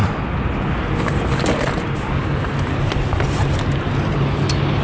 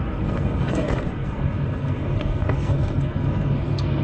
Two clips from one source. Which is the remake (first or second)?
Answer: second